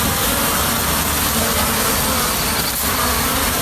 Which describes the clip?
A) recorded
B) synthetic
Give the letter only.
A